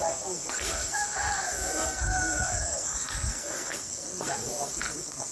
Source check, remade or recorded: remade